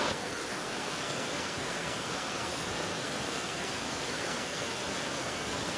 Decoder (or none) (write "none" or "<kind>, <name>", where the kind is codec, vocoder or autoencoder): codec, SNAC